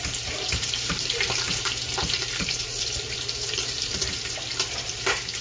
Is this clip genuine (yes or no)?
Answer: no